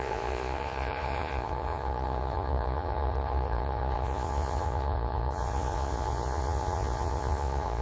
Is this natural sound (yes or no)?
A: no